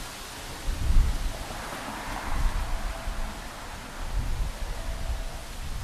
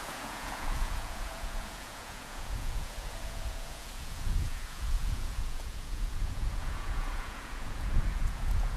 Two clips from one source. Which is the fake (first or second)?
second